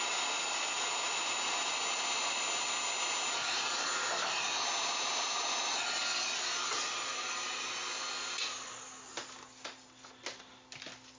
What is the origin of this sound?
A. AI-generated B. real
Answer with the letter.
B